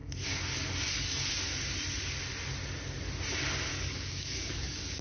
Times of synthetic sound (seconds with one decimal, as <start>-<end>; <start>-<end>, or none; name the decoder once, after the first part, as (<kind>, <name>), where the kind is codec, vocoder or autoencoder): 0.0-1.3 (codec, DAC); 3.7-5.0